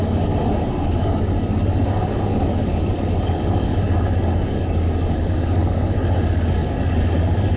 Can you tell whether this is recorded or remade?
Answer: remade